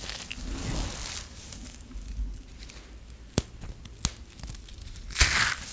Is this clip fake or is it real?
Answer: real